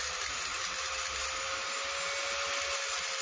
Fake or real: real